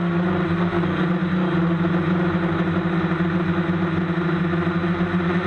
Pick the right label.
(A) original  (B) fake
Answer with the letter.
A